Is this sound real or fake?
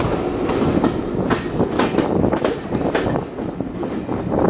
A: real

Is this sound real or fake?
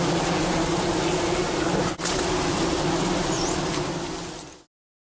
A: real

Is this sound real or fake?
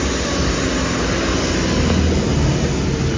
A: real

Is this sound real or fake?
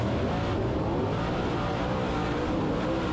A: real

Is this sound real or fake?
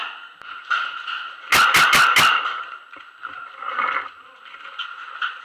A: real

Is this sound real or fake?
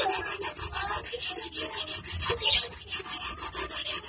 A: real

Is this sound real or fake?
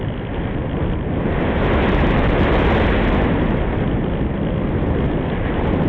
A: real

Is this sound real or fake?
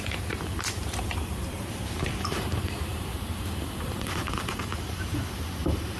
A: fake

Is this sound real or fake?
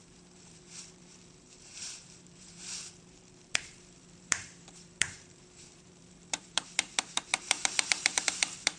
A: fake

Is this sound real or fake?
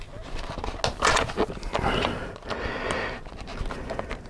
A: real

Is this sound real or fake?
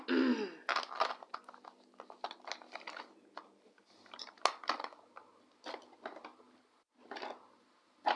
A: real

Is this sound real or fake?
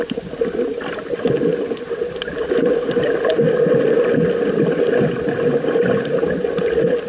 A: real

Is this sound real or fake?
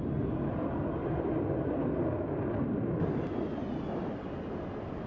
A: real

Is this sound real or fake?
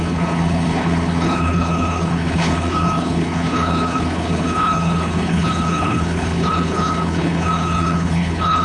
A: fake